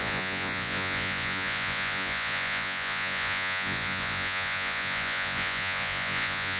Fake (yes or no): yes